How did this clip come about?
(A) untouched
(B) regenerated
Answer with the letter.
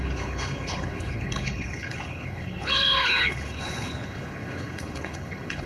B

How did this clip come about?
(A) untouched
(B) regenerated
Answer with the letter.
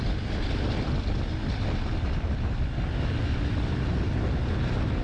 A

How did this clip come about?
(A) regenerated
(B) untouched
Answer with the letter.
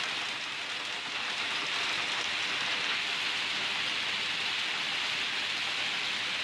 B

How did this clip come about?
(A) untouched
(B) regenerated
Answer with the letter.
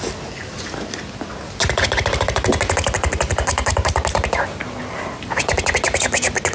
A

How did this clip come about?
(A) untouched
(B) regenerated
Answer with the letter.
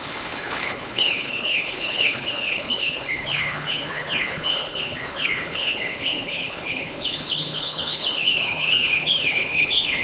B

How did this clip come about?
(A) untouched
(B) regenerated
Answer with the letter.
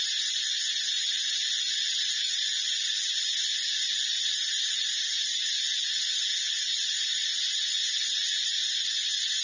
A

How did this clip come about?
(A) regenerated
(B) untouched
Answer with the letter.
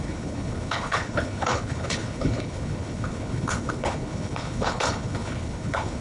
A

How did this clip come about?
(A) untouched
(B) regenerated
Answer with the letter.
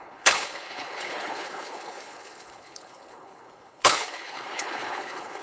B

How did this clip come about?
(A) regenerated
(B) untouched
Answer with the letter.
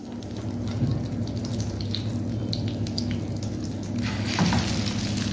B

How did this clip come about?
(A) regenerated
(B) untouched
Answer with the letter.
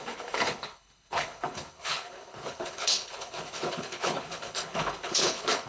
A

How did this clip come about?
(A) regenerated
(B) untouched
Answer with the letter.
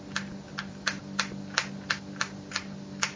B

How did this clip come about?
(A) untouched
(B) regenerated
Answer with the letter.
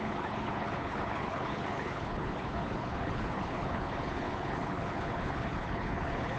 B